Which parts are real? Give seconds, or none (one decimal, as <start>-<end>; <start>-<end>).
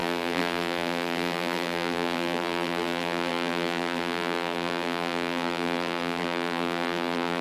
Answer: none